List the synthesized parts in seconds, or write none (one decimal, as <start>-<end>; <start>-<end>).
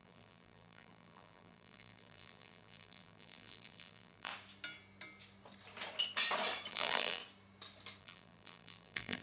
0.0-4.3; 6.7-7.2; 8.0-9.2